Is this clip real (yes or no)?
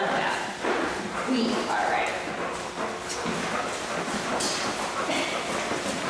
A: yes